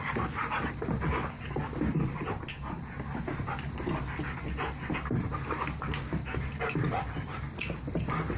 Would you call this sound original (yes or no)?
yes